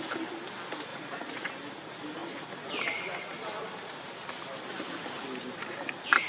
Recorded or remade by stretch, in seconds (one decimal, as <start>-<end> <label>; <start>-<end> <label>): 0.0-0.9 recorded; 0.9-1.5 remade; 1.5-6.3 recorded